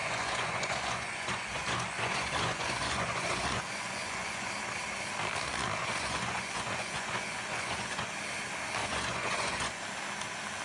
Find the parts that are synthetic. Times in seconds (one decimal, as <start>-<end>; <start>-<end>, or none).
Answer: 0.0-4.5; 5.8-8.1; 8.8-9.8